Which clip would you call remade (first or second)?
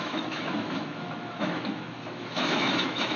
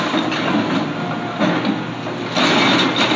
first